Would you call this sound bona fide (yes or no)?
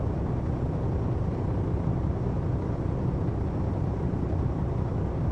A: yes